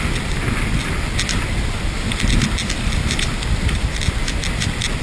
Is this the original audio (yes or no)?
yes